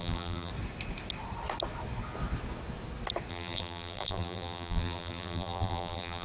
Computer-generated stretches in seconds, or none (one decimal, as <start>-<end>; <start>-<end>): 0.0-0.5; 3.3-6.2